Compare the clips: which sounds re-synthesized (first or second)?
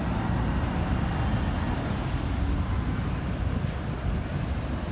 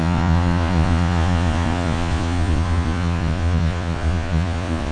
second